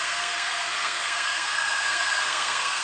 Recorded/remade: remade